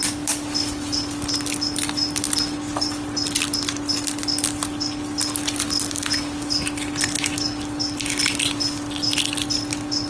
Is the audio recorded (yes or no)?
yes